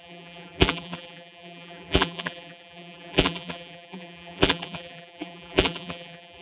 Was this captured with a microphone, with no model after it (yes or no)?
no